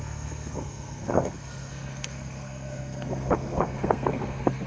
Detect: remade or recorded remade